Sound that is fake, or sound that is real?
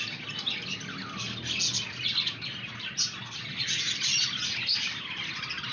real